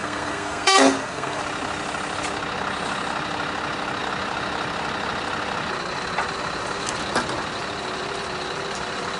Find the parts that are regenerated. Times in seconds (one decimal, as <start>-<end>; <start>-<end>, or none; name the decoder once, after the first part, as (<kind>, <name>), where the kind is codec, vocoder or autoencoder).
0.0-1.4 (codec, SNAC)